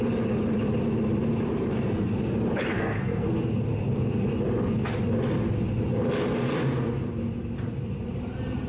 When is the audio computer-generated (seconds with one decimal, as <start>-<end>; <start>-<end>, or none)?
2.7-3.3